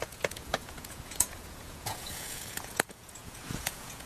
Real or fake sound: fake